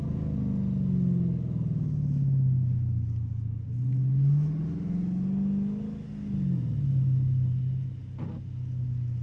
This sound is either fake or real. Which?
real